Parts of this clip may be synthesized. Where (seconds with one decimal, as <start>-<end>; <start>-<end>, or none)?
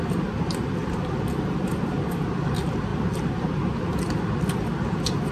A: none